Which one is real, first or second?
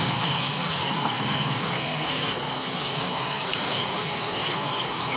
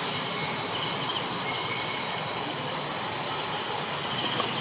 second